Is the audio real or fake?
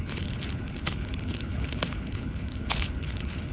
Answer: fake